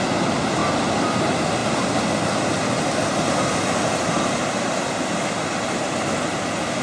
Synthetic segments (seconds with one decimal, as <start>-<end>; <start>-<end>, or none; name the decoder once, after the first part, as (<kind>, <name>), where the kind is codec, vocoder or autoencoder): none